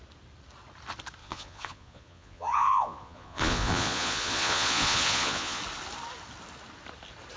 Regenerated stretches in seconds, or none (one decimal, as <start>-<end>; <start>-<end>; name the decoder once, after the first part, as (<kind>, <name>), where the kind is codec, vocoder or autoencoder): 1.2-5.6 (vocoder, Vocos)

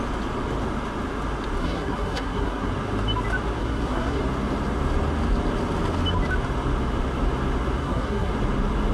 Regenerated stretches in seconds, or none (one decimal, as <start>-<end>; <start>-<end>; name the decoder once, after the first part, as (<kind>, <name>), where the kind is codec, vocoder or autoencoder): 1.6-2.7 (codec, SNAC); 3.6-4.2; 7.8-8.3

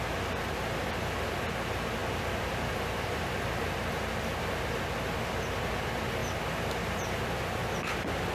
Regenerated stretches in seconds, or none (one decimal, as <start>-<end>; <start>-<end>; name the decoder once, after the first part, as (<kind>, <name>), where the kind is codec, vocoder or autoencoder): 2.0-4.7 (vocoder, BigVGAN v2)